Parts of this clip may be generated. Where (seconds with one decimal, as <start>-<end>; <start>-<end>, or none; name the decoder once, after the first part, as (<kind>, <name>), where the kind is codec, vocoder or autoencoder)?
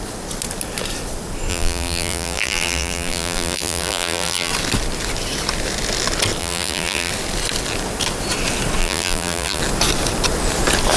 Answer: 1.5-4.5 (vocoder, BigVGAN v2); 6.4-7.1; 8.8-9.6